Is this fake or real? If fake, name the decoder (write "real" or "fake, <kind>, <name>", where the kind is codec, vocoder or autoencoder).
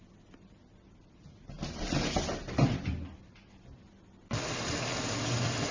real